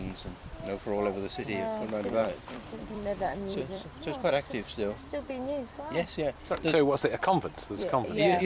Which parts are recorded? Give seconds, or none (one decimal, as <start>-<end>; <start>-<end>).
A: 0.0-2.2; 4.3-6.1